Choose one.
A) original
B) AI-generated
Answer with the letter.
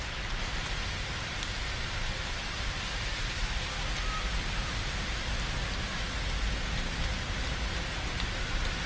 A